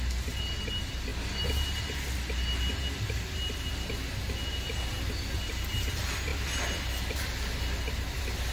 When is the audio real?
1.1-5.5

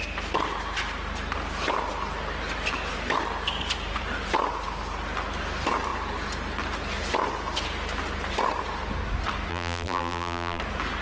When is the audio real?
0.0-9.5; 10.6-11.0

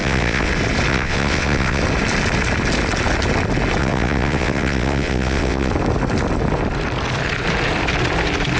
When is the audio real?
0.5-0.9; 1.8-3.8; 5.7-8.6

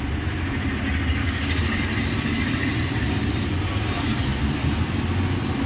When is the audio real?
0.0-1.2; 1.8-5.7

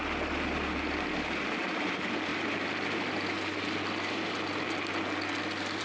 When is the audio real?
0.0-5.8